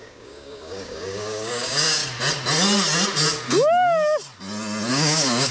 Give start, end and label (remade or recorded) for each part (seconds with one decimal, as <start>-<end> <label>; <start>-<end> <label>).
0.0-2.0 remade; 2.0-4.9 recorded; 4.9-5.5 remade

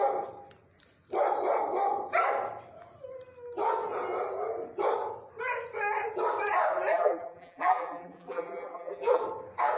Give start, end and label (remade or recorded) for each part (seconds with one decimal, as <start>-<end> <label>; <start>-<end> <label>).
0.0-6.9 recorded; 6.9-9.2 remade; 9.2-9.8 recorded

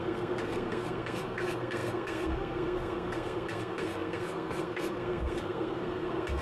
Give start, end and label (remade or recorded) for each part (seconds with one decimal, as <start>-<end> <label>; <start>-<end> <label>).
0.0-6.4 remade

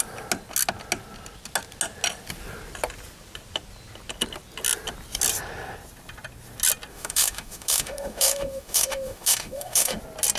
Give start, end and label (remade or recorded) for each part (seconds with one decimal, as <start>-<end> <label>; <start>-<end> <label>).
0.0-6.9 recorded; 6.9-10.0 remade; 10.0-10.4 recorded

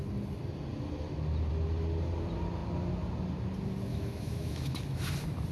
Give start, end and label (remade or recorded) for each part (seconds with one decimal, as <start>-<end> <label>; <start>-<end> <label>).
0.0-3.9 recorded; 3.9-5.1 remade; 5.1-5.5 recorded

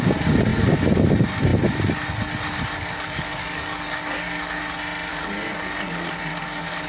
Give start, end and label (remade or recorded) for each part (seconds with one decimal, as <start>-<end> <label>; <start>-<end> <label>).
0.0-2.8 recorded; 2.8-4.6 remade; 4.6-5.1 recorded; 5.1-6.9 remade